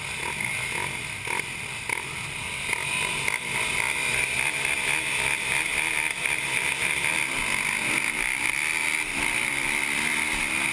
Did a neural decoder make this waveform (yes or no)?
no